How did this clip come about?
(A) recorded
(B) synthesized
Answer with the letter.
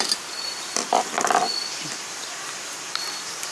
A